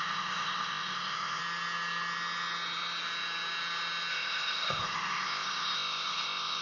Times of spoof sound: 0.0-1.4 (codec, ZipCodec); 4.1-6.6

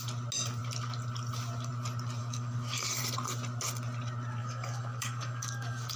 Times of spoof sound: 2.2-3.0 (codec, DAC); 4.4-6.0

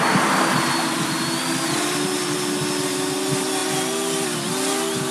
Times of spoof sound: none